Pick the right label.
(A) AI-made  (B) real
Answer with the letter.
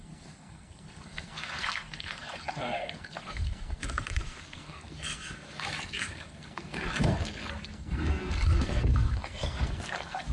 A